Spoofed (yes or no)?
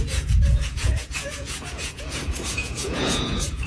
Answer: yes